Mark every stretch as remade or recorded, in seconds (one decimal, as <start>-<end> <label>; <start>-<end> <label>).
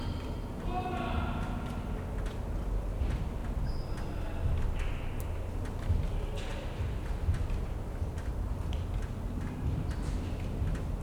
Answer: 0.0-11.0 recorded